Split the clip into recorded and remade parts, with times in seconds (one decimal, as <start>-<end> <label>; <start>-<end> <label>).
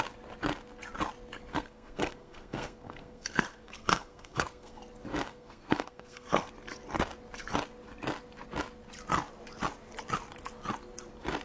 0.0-1.5 recorded; 1.5-4.8 remade; 4.8-5.3 recorded; 5.3-6.5 remade; 6.5-11.4 recorded